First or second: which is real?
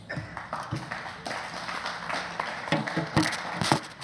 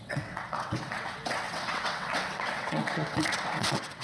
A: first